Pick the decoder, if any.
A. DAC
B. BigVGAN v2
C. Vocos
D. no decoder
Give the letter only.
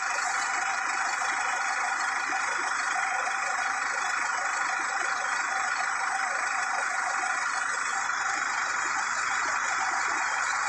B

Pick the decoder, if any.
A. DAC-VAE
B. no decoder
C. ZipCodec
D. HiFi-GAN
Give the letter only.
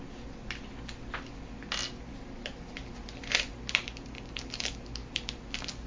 B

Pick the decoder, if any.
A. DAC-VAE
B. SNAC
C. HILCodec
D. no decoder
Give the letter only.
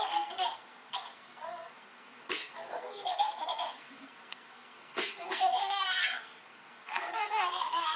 B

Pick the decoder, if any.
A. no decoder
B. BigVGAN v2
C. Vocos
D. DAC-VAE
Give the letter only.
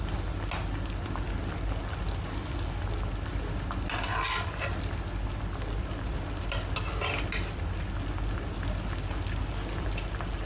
A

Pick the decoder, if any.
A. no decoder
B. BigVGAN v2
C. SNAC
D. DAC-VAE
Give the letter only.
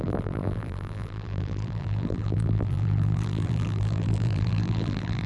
B